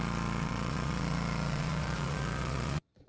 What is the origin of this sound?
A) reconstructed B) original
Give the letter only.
A